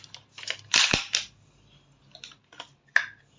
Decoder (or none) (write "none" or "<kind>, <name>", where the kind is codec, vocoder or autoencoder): none